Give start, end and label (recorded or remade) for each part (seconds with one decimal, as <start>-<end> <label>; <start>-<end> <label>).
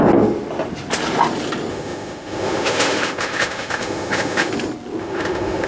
0.0-1.7 recorded; 1.7-4.5 remade; 4.5-5.0 recorded; 5.0-5.7 remade